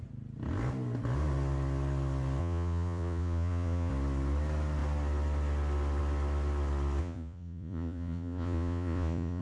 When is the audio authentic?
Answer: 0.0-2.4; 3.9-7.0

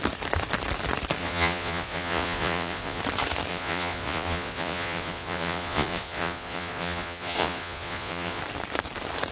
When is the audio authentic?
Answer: 0.0-1.2; 3.0-3.5; 8.4-9.3